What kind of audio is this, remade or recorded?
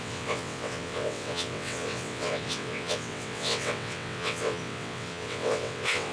remade